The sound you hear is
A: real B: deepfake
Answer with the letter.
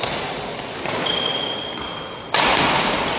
A